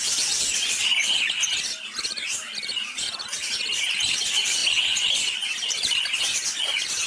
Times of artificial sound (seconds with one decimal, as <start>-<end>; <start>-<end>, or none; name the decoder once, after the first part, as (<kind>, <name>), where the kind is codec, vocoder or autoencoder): none